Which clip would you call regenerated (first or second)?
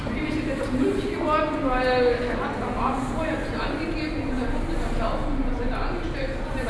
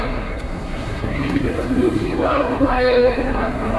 second